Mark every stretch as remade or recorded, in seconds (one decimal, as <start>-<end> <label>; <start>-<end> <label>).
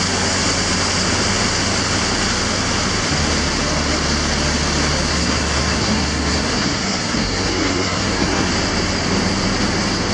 0.0-5.1 recorded; 5.1-8.5 remade; 8.5-10.1 recorded